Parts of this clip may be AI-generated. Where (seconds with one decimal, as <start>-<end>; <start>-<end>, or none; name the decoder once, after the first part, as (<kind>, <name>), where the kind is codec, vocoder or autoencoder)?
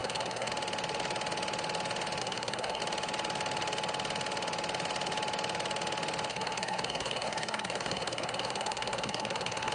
0.0-0.5 (codec, SNAC); 2.2-2.8; 6.3-9.7